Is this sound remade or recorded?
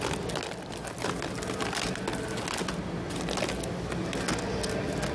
recorded